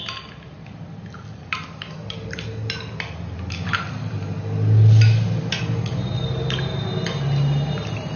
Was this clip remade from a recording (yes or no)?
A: no